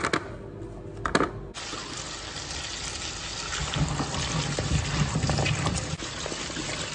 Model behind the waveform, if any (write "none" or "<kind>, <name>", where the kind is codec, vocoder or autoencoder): none